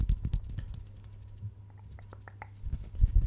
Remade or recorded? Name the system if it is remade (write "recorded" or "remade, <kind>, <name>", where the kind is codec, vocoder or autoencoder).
recorded